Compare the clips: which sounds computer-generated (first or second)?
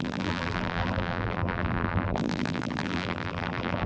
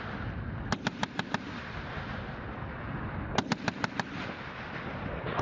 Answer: first